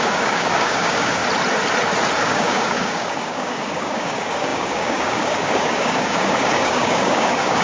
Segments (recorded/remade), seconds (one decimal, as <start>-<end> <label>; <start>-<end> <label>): 0.0-1.2 remade; 1.2-2.2 recorded; 2.2-7.6 remade